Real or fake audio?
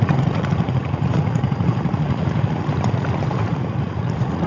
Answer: fake